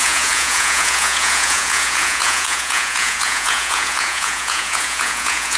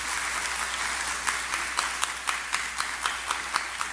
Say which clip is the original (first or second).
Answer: second